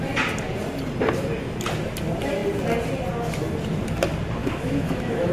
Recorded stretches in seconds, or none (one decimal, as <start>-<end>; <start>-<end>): 0.0-4.4